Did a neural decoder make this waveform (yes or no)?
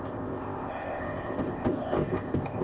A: yes